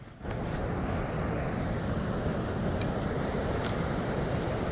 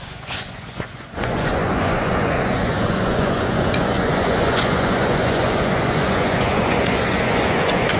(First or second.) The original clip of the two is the first